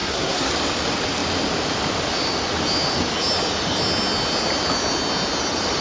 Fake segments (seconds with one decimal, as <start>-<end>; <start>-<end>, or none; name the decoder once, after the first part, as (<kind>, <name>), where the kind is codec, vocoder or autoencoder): 0.0-0.5 (codec, SNAC)

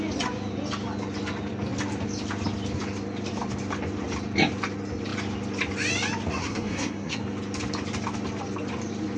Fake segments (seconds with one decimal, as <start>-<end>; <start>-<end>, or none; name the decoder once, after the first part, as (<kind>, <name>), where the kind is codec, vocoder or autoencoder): 6.4-7.2 (codec, SNAC)

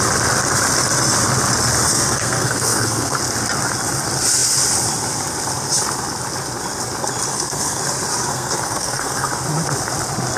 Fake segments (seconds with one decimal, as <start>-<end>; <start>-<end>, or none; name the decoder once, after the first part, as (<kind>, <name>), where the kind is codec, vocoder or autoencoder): 1.9-3.2 (codec, SNAC); 7.3-7.8; 8.3-9.3

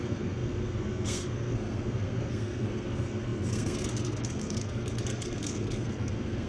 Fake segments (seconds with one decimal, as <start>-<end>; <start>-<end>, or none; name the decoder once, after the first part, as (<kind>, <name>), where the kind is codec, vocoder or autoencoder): 0.0-6.5 (codec, SNAC)

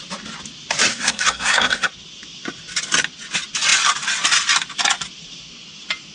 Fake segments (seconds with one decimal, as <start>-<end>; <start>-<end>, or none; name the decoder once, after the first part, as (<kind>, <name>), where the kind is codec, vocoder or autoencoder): 0.9-1.9 (codec, SNAC)

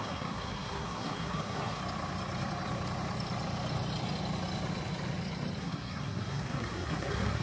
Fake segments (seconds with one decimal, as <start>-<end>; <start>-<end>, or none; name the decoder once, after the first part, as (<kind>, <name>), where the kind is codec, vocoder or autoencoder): 0.0-1.8 (codec, SNAC); 5.6-7.4

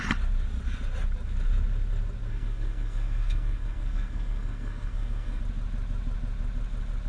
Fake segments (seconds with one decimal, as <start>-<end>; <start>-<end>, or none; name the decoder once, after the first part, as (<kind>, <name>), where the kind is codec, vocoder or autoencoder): 2.3-5.4 (codec, SNAC)